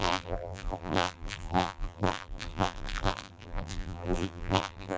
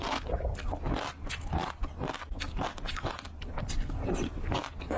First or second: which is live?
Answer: second